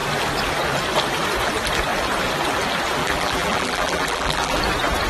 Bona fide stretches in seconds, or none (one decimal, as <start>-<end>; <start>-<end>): 0.0-3.0; 4.6-5.1